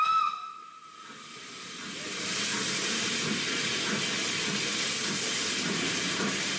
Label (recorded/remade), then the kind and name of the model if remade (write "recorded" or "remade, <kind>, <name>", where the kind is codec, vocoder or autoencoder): recorded